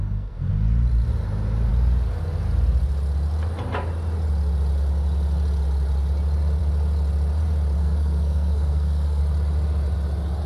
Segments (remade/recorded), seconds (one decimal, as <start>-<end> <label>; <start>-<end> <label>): 0.0-0.5 remade; 0.5-7.8 recorded; 7.8-9.2 remade; 9.2-10.5 recorded